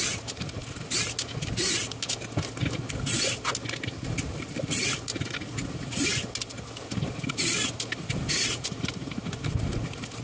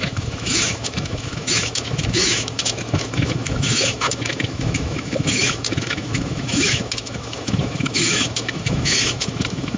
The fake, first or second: second